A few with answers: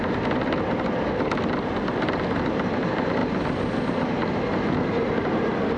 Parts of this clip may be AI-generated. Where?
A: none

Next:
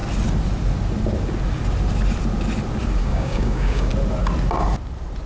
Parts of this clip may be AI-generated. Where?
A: 3.0-3.9

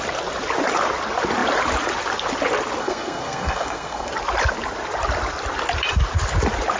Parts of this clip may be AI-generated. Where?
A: 2.8-4.1

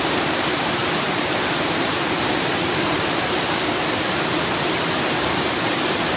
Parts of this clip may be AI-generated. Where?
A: 0.0-6.2

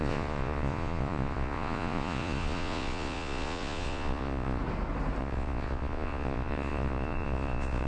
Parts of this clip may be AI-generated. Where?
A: 0.0-4.6; 5.2-7.9

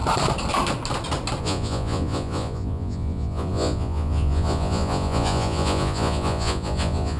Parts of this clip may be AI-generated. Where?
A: 1.4-7.2